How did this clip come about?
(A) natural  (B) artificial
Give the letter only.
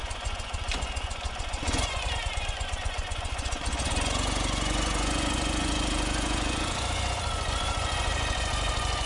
B